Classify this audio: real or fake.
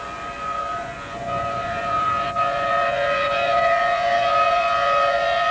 fake